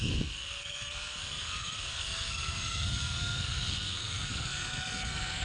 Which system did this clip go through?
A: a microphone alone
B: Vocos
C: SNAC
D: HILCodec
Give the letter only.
C